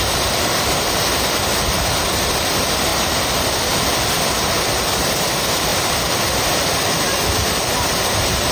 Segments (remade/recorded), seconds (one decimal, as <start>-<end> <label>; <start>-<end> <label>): 0.0-2.9 remade; 2.9-3.5 recorded; 3.5-8.5 remade